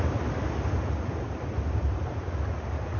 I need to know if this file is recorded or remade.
recorded